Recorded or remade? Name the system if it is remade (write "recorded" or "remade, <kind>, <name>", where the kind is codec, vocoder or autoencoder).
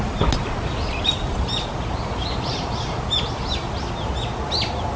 recorded